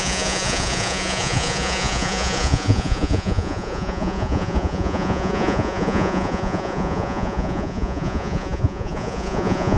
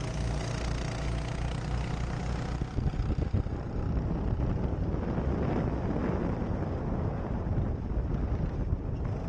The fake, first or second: first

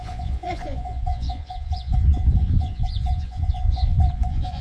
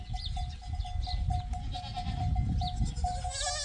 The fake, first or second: first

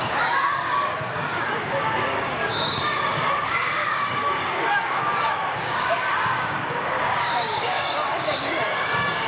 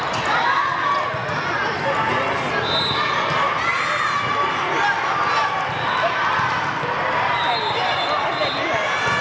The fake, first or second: first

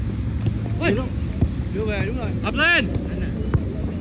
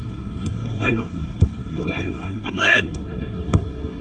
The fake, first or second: second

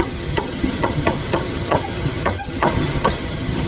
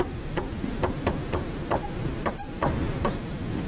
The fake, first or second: first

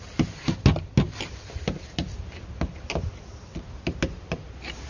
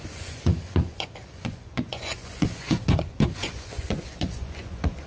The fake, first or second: second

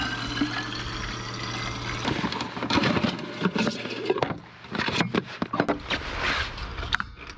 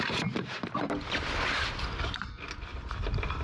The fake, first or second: second